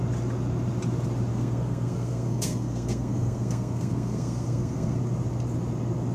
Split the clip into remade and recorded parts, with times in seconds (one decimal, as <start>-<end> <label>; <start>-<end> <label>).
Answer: 0.0-1.3 recorded; 1.3-5.0 remade; 5.0-6.1 recorded